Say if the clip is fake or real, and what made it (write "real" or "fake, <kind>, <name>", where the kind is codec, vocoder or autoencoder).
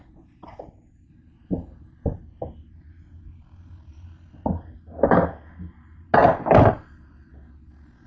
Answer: real